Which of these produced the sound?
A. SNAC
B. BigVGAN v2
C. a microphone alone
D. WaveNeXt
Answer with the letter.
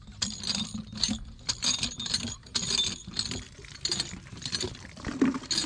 C